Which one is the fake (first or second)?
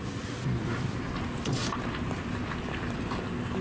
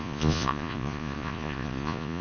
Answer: second